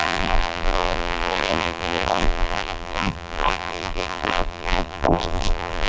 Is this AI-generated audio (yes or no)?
yes